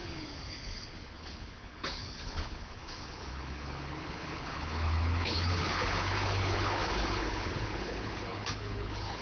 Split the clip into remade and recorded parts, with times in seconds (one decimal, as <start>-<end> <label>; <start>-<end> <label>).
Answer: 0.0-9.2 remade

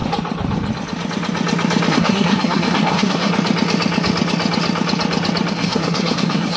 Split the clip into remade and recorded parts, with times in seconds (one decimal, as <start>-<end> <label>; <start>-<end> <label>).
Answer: 0.0-1.9 recorded; 1.9-3.3 remade; 3.3-5.5 recorded; 5.5-6.6 remade

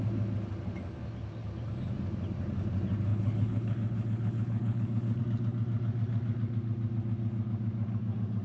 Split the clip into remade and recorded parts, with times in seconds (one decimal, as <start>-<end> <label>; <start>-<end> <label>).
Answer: 0.0-3.1 recorded; 3.1-5.2 remade; 5.2-8.4 recorded

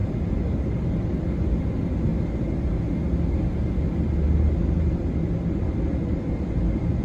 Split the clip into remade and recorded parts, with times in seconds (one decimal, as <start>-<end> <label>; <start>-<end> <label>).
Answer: 0.0-0.6 recorded; 0.6-2.1 remade; 2.1-5.6 recorded; 5.6-7.0 remade